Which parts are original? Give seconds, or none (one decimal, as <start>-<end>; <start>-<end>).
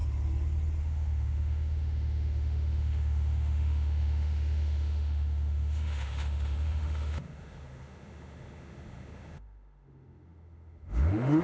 0.0-0.8